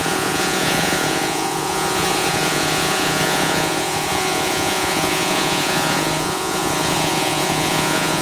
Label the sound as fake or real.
fake